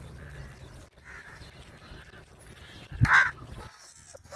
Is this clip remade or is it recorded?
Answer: recorded